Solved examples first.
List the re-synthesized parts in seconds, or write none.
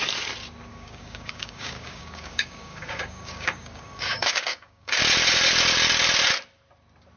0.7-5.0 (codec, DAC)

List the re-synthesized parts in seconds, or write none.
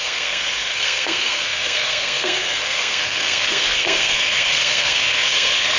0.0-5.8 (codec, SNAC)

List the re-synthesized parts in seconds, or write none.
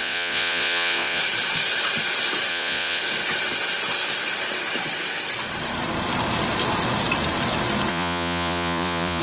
0.0-1.2 (vocoder, Vocos); 2.5-3.0; 7.9-9.2